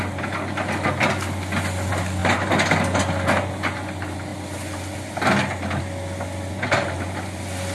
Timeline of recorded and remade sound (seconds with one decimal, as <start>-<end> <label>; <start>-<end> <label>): 0.0-7.7 recorded